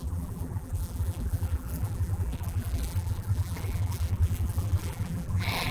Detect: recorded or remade remade